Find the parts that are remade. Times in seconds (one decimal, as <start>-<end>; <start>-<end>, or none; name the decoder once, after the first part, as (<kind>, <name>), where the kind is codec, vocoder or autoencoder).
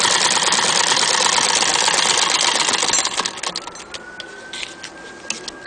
none